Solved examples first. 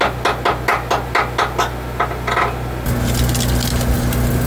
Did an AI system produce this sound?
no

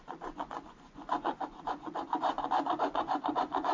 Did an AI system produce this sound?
yes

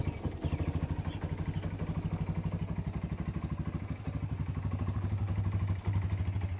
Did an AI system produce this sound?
no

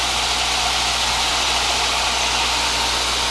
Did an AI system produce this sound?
no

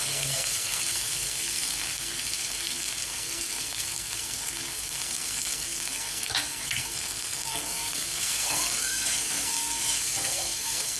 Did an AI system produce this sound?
yes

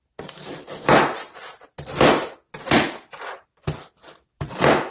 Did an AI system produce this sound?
no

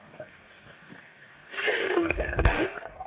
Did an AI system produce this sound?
yes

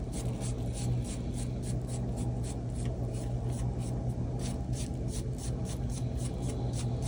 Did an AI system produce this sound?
no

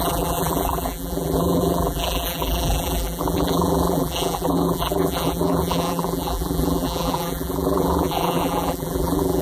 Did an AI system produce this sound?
yes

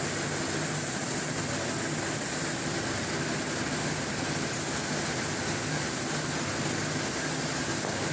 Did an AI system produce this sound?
no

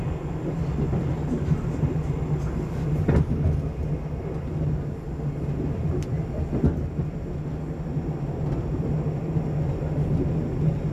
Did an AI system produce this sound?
no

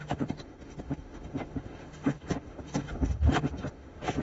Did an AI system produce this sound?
yes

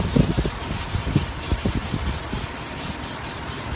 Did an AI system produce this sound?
no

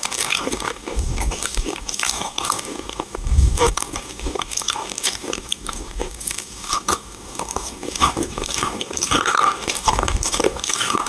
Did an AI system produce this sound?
yes